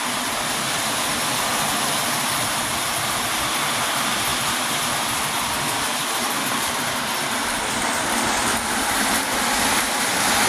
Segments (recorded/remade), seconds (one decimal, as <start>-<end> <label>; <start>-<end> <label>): 0.0-10.5 recorded